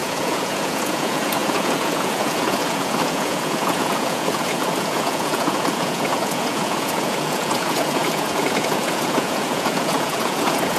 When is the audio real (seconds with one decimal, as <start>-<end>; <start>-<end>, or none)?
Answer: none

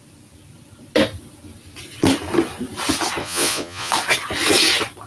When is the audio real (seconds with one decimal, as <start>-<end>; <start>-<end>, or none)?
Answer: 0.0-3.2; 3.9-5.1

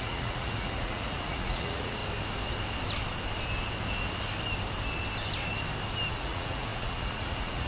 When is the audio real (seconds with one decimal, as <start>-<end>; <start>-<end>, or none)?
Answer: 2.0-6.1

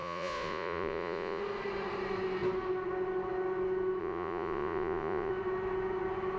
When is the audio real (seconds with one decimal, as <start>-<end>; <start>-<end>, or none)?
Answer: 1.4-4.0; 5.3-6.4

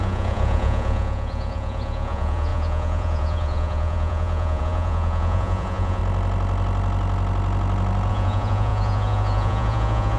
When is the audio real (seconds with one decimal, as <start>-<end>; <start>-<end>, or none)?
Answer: 6.0-8.1

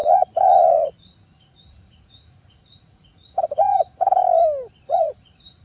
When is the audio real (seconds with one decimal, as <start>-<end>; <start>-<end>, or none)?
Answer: 4.2-4.8

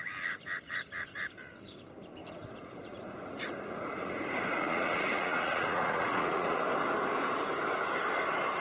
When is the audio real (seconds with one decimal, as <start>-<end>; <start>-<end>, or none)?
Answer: 0.0-2.2; 6.6-8.6